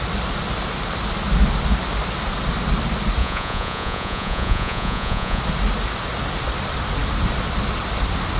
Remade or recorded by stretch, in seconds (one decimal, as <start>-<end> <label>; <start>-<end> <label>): 0.0-3.2 recorded; 3.2-5.4 remade; 5.4-8.4 recorded